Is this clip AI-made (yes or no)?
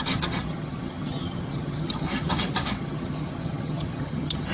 yes